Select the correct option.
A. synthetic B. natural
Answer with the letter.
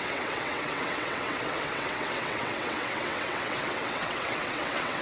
A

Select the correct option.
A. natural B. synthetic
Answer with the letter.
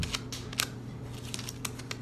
A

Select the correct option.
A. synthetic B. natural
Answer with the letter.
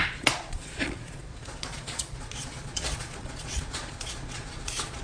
A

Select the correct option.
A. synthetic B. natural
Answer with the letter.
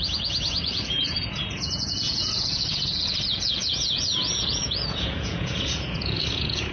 A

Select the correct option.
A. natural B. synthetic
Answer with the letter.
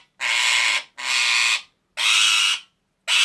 A